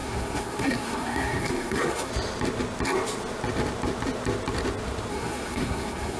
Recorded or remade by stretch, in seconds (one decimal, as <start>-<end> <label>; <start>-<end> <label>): 0.0-2.1 remade; 2.1-5.1 recorded; 5.1-6.2 remade